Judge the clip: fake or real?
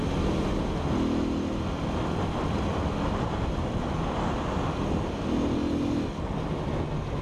real